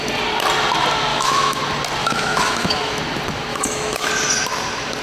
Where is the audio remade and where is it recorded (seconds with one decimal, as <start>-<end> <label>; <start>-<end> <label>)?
0.0-1.1 recorded; 1.1-1.6 remade; 1.6-2.0 recorded; 2.0-3.0 remade; 3.0-3.5 recorded; 3.5-4.1 remade; 4.1-5.0 recorded